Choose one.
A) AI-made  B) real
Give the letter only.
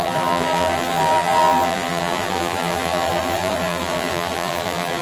A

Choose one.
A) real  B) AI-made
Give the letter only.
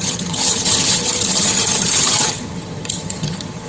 B